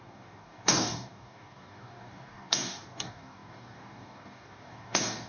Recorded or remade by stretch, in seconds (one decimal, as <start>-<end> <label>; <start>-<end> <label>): 0.0-5.3 remade